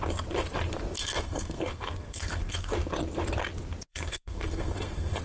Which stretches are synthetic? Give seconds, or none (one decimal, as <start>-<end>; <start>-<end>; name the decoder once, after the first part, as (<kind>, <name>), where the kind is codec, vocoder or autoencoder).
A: 1.0-2.7 (codec, SNAC); 3.9-5.2